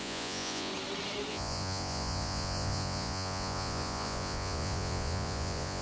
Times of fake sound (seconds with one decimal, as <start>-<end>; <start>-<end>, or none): 0.0-0.7; 1.3-5.8